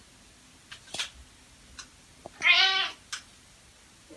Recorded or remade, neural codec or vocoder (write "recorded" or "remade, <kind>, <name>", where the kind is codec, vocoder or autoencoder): recorded